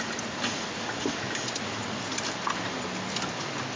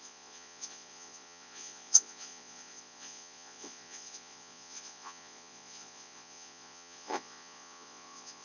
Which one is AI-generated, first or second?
second